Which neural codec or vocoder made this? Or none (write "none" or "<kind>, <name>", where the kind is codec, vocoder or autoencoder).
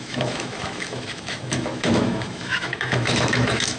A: autoencoder, DAC-VAE